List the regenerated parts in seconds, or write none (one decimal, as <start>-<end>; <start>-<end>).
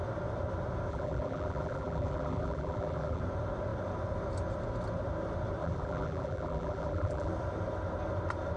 0.9-3.2; 5.6-7.3